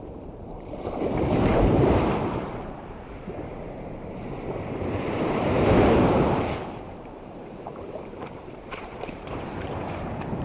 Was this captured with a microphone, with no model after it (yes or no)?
no